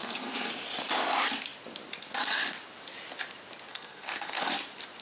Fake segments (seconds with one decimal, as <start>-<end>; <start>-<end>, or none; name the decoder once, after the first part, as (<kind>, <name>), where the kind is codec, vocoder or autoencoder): 0.0-0.5 (codec, SNAC); 3.7-4.5